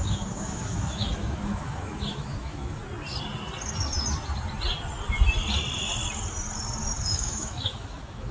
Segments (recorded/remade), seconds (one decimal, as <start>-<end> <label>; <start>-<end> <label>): 0.0-2.8 remade; 2.8-7.1 recorded; 7.1-8.3 remade